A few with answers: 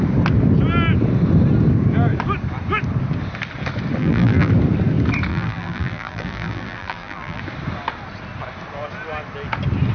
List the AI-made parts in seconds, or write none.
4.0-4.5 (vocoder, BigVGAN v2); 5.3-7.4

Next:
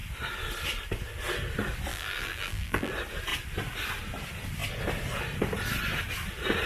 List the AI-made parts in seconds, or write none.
1.9-2.9 (vocoder, BigVGAN v2)

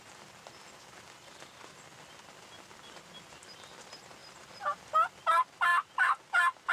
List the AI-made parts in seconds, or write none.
4.2-4.8 (vocoder, BigVGAN v2); 5.7-6.7

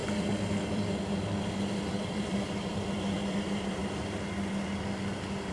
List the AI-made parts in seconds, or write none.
0.5-3.8 (vocoder, BigVGAN v2)

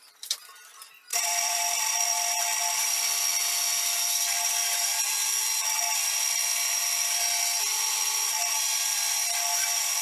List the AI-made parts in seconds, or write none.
1.1-2.4 (vocoder, BigVGAN v2)

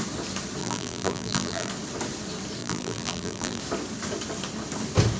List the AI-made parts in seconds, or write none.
0.6-1.7 (vocoder, BigVGAN v2); 2.6-3.6

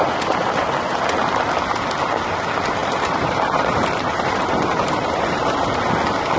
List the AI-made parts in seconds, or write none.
2.8-5.6 (vocoder, BigVGAN v2)

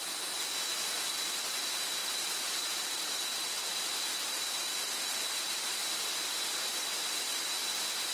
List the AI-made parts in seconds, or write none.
2.0-2.9 (vocoder, BigVGAN v2); 5.8-7.3